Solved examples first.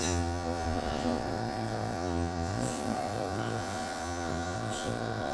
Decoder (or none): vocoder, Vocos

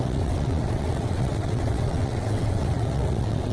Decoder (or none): vocoder, WaveNeXt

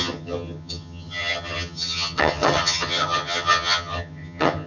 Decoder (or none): vocoder, HiFi-GAN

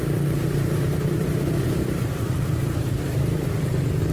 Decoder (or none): vocoder, BigVGAN v2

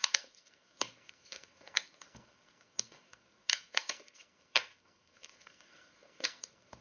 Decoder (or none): codec, SNAC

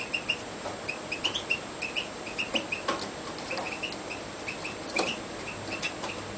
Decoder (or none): none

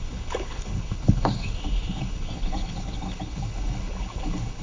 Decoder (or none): codec, HILCodec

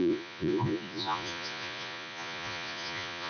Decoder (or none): vocoder, Vocos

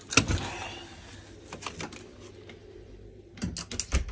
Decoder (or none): none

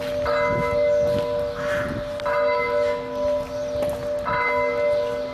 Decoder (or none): none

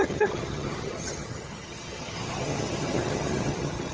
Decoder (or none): vocoder, HiFi-GAN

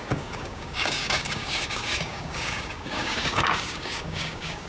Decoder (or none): codec, DAC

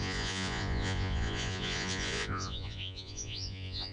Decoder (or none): vocoder, Vocos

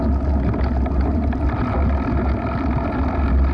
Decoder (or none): none